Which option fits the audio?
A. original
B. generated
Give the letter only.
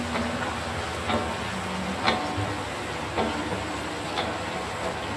A